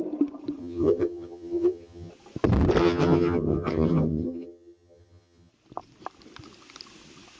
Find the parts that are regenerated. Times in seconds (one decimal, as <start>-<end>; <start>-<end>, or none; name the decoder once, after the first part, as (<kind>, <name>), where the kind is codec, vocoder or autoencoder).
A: 0.6-2.1 (vocoder, HiFi-GAN); 2.8-5.5